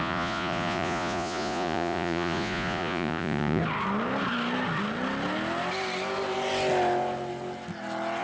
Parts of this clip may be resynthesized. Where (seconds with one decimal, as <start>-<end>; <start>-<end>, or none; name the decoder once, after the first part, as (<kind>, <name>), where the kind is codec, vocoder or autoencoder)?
0.0-3.6 (vocoder, Vocos)